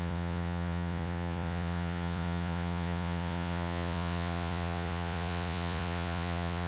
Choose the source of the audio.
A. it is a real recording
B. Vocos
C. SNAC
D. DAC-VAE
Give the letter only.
B